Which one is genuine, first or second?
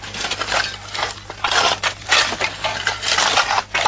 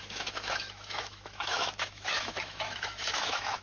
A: first